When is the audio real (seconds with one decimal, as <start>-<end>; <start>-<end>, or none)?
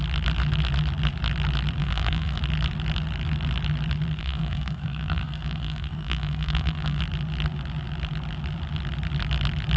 0.0-1.8; 2.4-4.2; 7.0-9.8